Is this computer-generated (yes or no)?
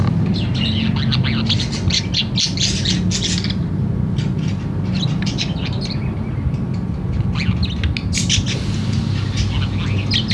no